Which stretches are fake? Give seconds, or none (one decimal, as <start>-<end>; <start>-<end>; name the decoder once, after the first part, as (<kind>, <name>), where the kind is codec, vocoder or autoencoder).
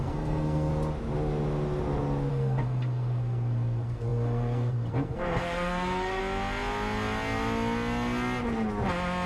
0.0-0.7 (codec, SNAC); 2.3-6.2